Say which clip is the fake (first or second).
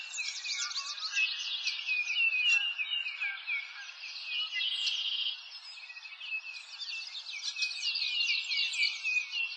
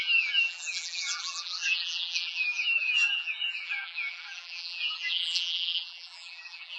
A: second